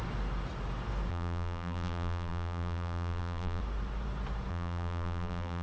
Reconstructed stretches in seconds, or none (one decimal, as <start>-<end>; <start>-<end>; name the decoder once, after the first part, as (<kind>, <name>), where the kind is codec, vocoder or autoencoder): 1.1-3.6 (vocoder, BigVGAN v2); 4.5-5.6